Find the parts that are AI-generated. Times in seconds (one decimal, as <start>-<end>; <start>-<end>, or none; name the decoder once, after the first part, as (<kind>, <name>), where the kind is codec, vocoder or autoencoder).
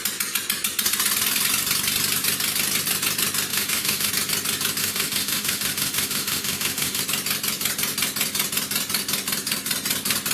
3.5-4.1 (autoencoder, DAC-VAE); 4.8-7.0